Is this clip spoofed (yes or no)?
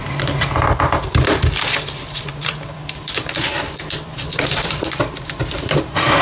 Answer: yes